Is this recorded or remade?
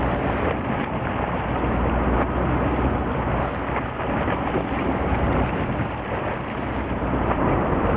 recorded